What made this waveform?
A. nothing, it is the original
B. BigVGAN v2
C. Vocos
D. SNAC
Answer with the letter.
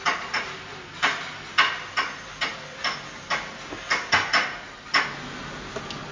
A